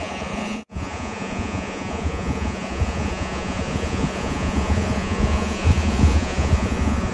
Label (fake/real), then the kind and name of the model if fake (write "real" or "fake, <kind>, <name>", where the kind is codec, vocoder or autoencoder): fake, vocoder, Vocos